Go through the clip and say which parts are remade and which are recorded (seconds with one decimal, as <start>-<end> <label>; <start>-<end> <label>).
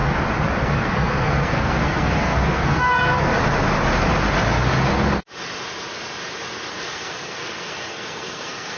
0.0-0.6 recorded; 0.6-3.3 remade; 3.3-6.7 recorded; 6.7-8.8 remade